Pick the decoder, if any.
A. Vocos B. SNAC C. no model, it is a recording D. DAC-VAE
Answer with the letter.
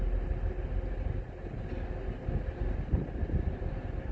C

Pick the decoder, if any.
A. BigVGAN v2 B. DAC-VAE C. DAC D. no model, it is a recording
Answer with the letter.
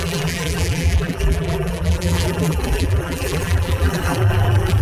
A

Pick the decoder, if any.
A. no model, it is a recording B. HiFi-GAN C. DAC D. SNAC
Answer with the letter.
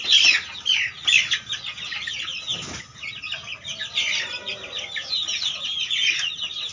A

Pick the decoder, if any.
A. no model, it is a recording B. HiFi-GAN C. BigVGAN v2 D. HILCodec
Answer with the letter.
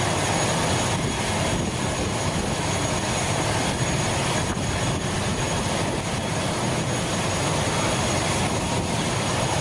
A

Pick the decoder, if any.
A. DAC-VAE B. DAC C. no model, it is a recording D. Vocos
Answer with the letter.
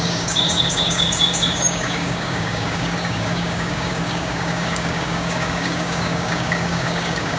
B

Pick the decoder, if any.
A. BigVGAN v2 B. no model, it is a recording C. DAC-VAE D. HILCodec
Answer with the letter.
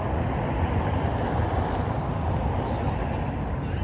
B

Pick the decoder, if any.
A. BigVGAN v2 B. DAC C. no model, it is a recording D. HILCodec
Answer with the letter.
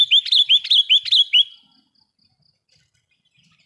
C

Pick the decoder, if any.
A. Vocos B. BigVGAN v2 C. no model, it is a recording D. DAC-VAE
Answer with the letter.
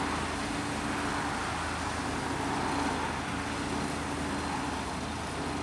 C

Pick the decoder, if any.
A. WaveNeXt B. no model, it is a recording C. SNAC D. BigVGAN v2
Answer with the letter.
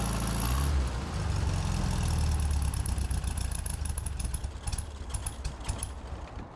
B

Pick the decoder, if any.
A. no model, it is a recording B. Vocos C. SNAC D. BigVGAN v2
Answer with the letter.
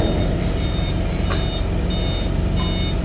A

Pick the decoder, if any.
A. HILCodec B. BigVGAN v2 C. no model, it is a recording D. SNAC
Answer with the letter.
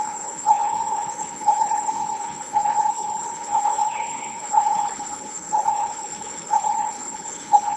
A